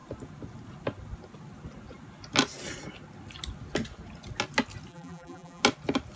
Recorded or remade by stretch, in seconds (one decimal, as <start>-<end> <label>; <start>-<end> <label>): 0.0-4.9 recorded; 4.9-5.6 remade; 5.6-6.2 recorded